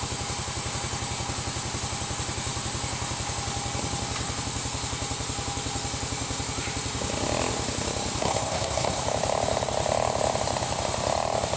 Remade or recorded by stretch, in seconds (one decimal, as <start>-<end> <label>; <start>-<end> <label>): 0.0-8.2 recorded; 8.2-9.0 remade; 9.0-11.6 recorded